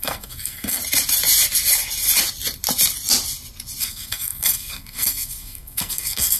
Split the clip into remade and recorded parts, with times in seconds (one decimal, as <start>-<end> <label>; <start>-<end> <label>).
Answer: 0.0-0.8 remade; 0.8-3.8 recorded; 3.8-6.4 remade